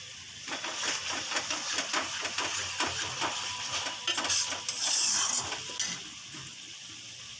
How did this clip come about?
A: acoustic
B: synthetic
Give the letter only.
A